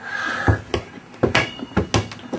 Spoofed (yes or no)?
no